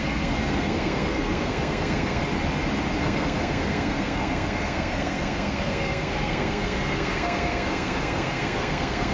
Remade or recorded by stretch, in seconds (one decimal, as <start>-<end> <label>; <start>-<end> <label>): 0.0-2.2 remade; 2.2-3.0 recorded; 3.0-9.1 remade